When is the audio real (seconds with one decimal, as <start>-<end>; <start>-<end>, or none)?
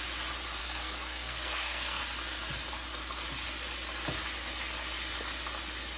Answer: 0.0-0.6; 2.0-6.0